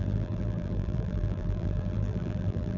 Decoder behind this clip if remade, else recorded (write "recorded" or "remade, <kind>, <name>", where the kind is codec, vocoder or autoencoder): remade, vocoder, BigVGAN v2